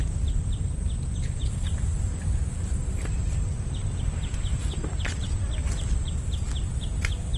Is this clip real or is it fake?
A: real